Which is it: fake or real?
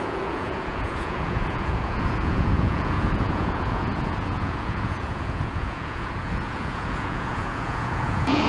fake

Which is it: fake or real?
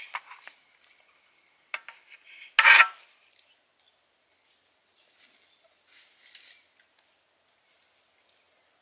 real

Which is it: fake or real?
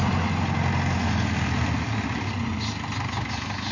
real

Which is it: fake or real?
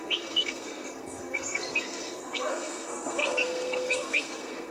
fake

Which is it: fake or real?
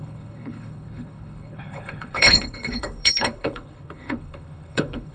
fake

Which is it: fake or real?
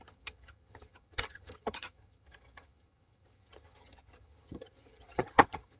fake